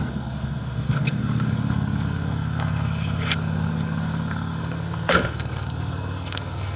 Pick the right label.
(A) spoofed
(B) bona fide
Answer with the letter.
A